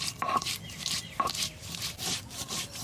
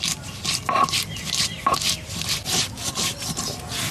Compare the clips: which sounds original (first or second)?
second